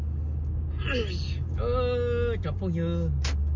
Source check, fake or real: real